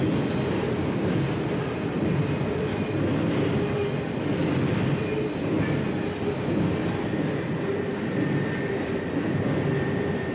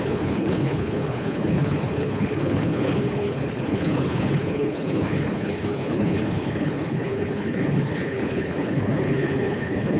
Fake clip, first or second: second